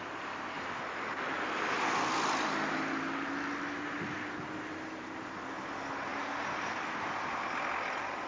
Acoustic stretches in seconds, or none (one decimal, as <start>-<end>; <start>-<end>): 0.0-8.3